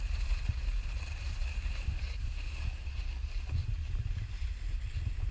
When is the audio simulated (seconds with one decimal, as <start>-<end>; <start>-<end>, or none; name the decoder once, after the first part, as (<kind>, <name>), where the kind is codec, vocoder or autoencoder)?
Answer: 3.6-4.1 (vocoder, BigVGAN v2)